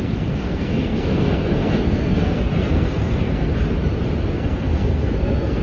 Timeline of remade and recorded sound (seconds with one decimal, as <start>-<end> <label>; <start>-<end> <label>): 0.0-3.5 remade; 3.5-4.3 recorded; 4.3-5.6 remade